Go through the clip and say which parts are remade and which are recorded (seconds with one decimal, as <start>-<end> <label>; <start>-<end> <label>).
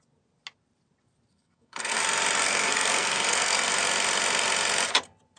0.0-1.3 recorded; 1.3-2.0 remade; 2.0-2.4 recorded; 2.4-3.7 remade; 3.7-5.4 recorded